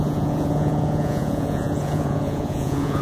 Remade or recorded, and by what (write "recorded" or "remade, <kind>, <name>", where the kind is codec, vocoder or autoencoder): remade, vocoder, Vocos